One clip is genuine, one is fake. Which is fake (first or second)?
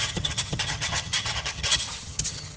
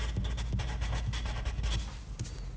first